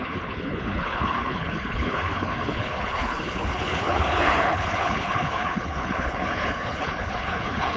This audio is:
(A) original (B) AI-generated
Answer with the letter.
B